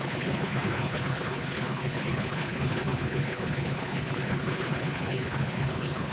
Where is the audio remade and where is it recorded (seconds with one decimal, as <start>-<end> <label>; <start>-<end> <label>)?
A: 0.0-6.1 remade